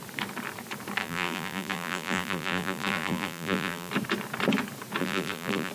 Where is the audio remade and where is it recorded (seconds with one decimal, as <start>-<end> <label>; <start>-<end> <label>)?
0.0-1.0 recorded; 1.0-3.9 remade; 3.9-5.0 recorded; 5.0-5.7 remade